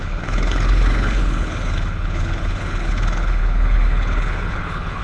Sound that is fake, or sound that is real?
fake